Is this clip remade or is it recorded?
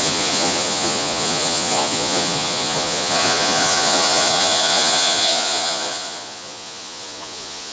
remade